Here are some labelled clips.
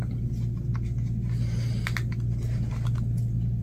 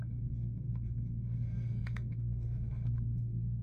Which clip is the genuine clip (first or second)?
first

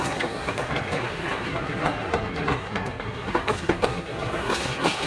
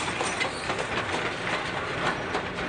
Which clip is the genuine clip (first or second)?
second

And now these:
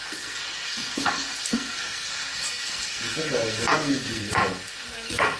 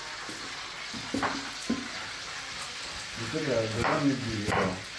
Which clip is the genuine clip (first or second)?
second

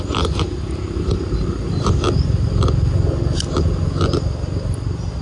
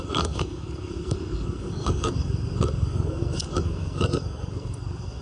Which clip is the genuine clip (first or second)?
first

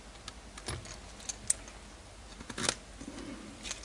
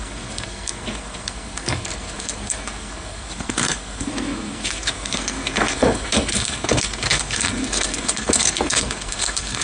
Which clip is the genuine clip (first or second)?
first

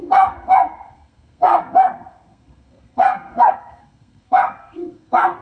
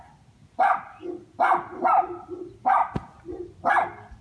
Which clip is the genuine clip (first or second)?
second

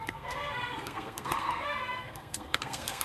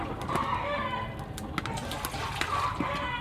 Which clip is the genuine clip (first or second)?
second